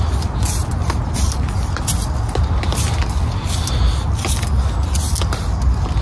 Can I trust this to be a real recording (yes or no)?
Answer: yes